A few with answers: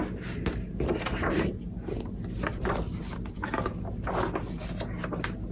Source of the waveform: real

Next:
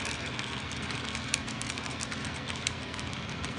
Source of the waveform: fake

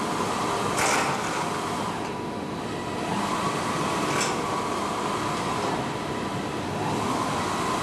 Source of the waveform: real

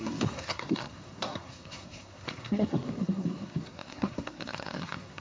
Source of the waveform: fake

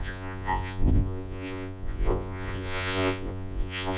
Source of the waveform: fake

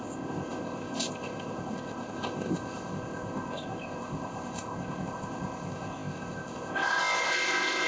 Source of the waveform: fake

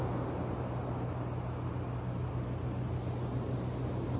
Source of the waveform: real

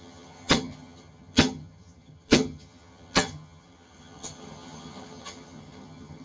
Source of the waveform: fake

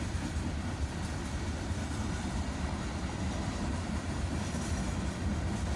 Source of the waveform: fake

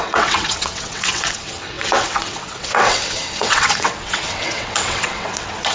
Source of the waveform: fake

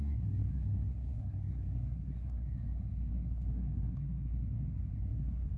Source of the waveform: fake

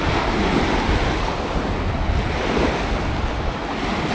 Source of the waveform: real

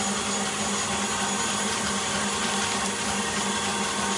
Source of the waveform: fake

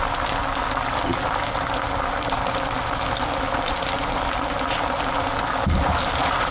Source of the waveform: real